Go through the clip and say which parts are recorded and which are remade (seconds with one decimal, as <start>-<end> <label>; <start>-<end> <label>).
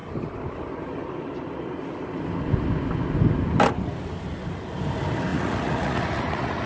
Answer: 0.0-5.3 recorded; 5.3-6.7 remade